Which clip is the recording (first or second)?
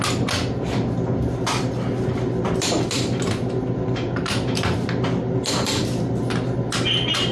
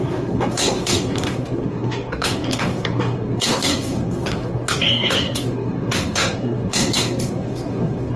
first